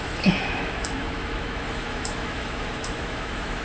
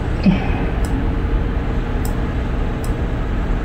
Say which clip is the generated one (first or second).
first